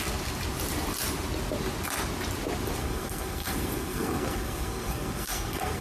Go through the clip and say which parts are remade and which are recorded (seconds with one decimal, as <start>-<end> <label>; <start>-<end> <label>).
0.0-2.8 recorded; 2.8-5.8 remade